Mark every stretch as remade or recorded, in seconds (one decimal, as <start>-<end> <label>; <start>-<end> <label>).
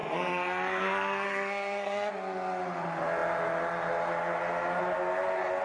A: 0.0-2.1 remade; 2.1-5.6 recorded